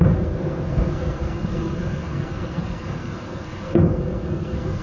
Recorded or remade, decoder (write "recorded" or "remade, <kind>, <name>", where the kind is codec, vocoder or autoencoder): remade, codec, SNAC